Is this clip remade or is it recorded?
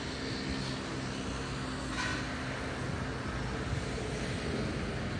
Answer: recorded